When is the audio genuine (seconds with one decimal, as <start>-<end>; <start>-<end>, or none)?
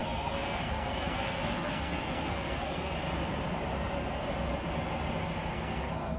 2.9-5.5